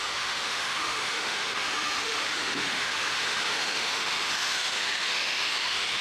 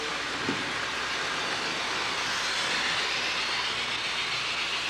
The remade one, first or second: first